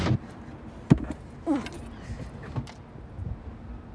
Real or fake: real